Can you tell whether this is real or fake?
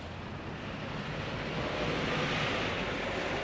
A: real